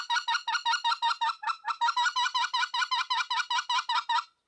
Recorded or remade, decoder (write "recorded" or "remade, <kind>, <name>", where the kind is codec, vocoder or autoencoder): recorded